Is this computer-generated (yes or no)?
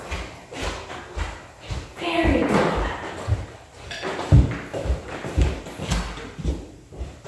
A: no